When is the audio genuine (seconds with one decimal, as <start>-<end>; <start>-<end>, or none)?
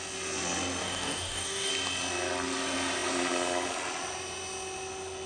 0.0-0.8; 1.7-5.3